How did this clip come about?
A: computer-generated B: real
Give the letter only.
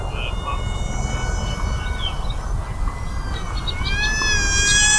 B